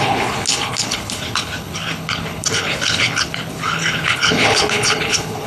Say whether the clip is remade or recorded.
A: remade